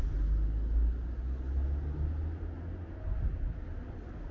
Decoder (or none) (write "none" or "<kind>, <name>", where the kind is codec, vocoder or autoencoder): none